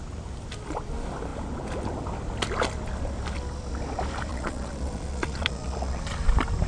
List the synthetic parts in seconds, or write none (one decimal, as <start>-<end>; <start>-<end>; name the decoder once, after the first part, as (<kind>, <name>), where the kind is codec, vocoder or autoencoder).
4.3-6.0 (vocoder, Vocos)